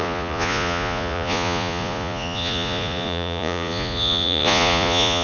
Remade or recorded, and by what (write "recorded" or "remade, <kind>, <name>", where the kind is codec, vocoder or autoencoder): remade, vocoder, Vocos